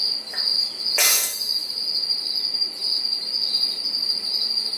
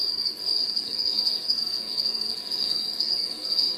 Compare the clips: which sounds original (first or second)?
first